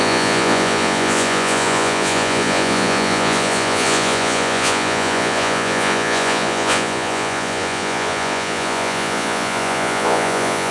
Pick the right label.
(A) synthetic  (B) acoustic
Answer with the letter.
A